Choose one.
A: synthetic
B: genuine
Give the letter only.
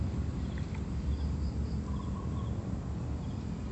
B